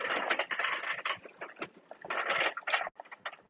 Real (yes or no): yes